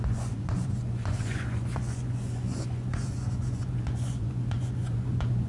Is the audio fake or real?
fake